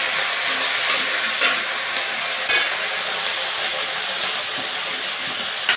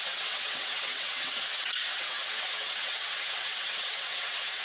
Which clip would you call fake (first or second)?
second